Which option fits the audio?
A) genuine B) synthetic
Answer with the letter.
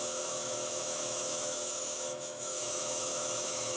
B